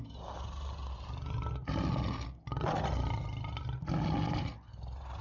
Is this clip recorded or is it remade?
recorded